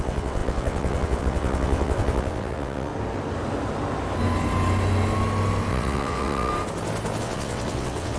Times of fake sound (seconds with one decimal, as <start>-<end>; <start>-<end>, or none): 0.0-2.9; 5.7-6.5; 7.2-8.2